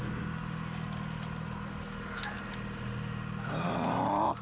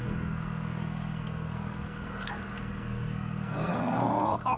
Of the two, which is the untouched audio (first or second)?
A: first